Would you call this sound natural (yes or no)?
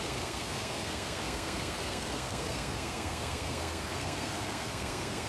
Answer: no